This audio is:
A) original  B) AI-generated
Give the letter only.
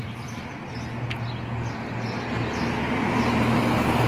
A